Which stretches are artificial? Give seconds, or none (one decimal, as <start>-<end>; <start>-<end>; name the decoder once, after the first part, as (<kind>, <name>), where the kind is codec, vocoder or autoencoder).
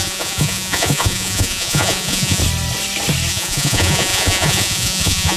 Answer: 0.0-2.4 (vocoder, Vocos); 3.3-5.4